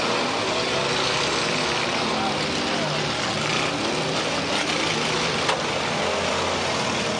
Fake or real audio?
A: real